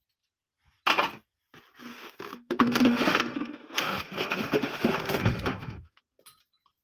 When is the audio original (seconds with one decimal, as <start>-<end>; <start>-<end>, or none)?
0.0-1.9; 6.0-6.8